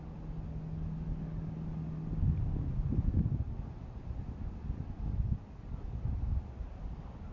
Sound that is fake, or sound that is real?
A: real